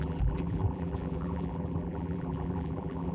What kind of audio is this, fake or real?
fake